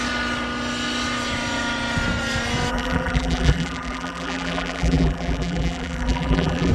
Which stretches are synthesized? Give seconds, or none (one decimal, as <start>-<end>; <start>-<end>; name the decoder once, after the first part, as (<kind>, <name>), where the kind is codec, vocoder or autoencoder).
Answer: 2.7-6.7 (vocoder, BigVGAN v2)